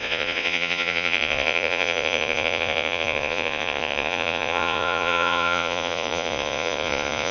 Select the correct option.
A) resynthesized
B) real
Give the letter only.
A